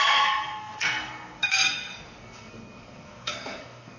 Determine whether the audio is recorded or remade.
remade